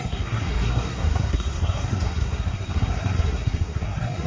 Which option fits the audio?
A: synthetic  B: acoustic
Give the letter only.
A